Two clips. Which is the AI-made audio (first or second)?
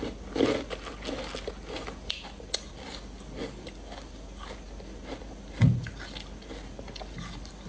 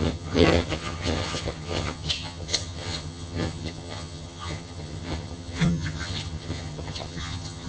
second